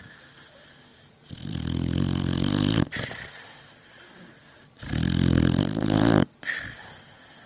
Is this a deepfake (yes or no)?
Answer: no